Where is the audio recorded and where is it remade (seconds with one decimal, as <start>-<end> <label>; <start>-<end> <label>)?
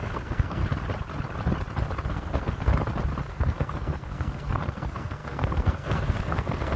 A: 0.0-0.6 remade; 0.6-2.1 recorded; 2.1-2.7 remade; 2.7-3.3 recorded; 3.3-6.8 remade